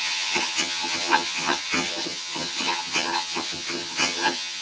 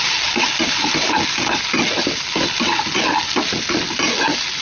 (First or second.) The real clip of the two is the second